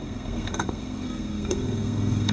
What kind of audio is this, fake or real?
fake